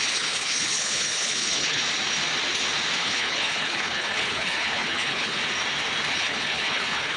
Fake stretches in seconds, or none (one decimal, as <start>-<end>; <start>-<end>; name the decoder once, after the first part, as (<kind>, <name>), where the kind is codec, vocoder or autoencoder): 0.0-1.8 (codec, HILCodec); 3.0-5.4; 6.1-7.2